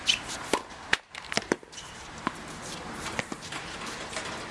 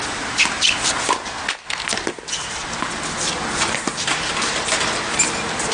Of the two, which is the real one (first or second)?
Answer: second